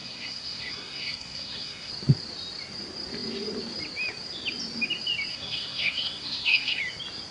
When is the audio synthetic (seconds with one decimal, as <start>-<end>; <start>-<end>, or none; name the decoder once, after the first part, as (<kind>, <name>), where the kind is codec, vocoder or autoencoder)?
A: 0.0-1.9 (codec, SNAC); 5.3-6.8